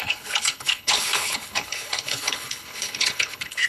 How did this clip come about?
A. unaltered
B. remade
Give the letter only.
B